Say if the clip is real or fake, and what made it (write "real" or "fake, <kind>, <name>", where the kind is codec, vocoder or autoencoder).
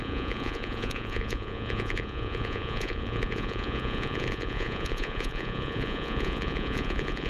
fake, vocoder, Vocos